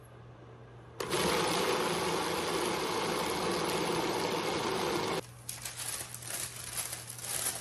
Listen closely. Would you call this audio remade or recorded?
recorded